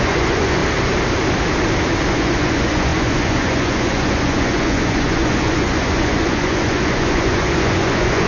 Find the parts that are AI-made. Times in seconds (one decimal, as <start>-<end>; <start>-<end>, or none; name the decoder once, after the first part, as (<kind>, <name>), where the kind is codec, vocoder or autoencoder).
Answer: 0.0-0.6 (vocoder, Vocos); 2.1-8.3